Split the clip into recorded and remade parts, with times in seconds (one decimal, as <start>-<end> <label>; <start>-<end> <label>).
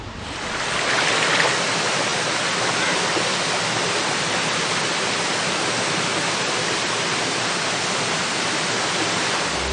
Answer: 0.0-9.7 recorded